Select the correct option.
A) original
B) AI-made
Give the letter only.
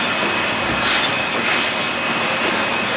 A